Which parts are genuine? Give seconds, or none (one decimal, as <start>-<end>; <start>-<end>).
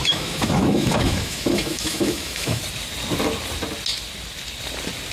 2.6-5.1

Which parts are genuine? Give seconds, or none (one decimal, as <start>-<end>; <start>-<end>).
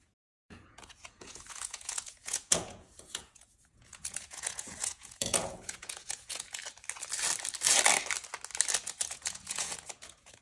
6.6-9.1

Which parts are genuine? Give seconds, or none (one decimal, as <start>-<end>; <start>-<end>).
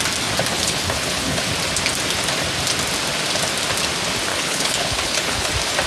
0.0-0.5; 1.4-4.3; 5.5-5.9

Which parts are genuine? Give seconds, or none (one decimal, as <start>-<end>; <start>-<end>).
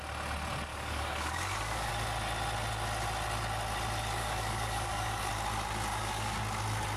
0.0-0.7; 1.9-4.2; 5.3-5.9; 6.4-7.0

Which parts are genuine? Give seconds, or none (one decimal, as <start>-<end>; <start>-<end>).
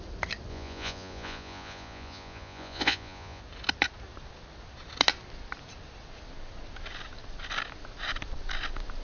0.0-0.5; 3.4-9.0